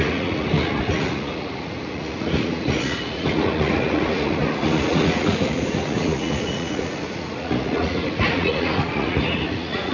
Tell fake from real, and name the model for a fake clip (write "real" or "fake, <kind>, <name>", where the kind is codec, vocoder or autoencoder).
fake, vocoder, Vocos